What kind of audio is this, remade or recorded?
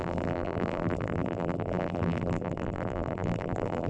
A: remade